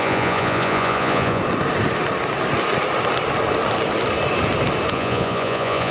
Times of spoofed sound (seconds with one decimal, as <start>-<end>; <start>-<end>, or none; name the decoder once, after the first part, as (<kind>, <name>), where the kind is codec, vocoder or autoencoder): 0.0-1.4 (vocoder, Vocos); 4.9-5.9